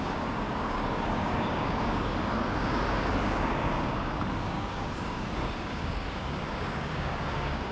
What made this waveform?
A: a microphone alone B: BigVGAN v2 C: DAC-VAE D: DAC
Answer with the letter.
D